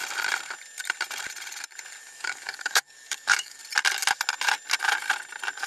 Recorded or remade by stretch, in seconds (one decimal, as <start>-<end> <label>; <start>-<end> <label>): 0.0-2.0 recorded; 2.0-3.6 remade; 3.6-5.7 recorded